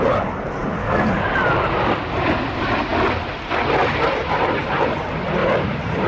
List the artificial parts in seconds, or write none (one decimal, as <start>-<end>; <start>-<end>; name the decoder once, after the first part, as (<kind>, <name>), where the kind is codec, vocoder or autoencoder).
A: 5.4-6.1 (vocoder, BigVGAN v2)